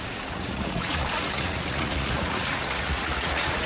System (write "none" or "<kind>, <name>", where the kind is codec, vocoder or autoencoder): vocoder, Vocos